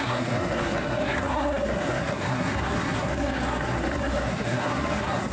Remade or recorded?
remade